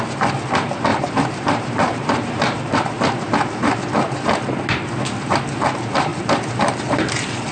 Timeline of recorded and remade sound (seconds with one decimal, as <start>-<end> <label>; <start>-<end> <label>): 0.0-0.9 recorded; 0.9-3.0 remade; 3.0-6.1 recorded; 6.1-7.1 remade; 7.1-7.5 recorded